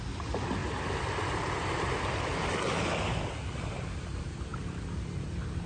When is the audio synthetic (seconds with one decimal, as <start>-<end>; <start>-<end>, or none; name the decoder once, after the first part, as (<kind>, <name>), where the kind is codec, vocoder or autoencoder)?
none